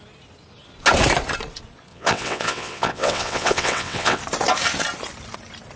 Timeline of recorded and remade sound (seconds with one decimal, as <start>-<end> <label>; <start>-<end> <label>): 0.0-1.9 recorded; 1.9-4.2 remade; 4.2-5.8 recorded